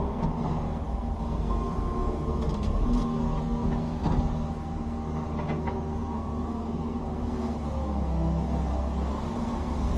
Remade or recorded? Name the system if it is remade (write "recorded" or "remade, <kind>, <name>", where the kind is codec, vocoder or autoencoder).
remade, codec, SNAC